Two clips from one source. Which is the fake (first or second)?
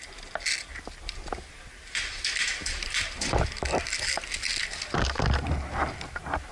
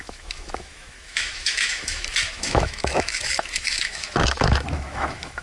second